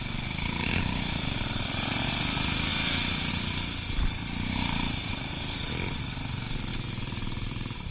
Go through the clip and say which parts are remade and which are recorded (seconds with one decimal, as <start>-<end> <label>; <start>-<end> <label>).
0.0-2.7 remade; 2.7-3.3 recorded; 3.3-7.9 remade